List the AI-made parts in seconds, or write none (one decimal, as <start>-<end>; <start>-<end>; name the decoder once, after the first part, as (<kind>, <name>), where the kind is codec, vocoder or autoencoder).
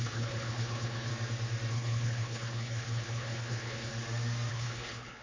0.0-1.1 (codec, HILCodec); 1.7-3.9; 4.5-5.2